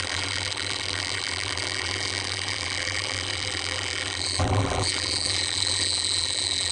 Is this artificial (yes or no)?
yes